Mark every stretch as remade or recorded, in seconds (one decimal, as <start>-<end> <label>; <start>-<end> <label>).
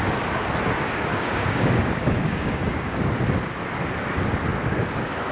0.0-1.1 recorded; 1.1-3.1 remade; 3.1-5.3 recorded